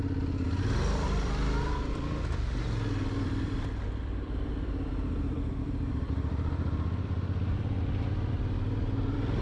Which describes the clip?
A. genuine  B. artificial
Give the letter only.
B